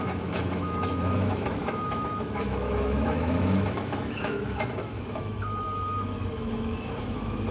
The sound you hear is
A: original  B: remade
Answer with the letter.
B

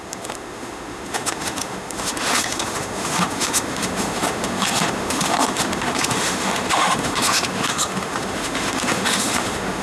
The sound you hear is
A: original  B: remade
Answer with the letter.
B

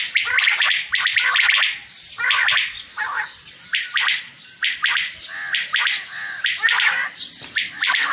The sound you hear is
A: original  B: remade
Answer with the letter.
A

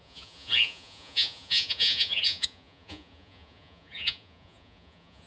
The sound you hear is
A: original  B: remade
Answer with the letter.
B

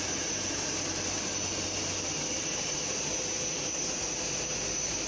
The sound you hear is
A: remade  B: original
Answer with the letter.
B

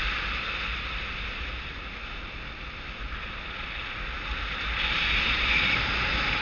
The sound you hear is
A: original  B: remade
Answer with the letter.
A